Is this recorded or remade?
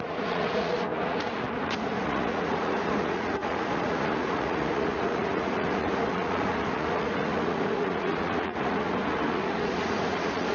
remade